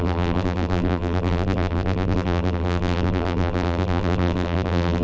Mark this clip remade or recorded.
remade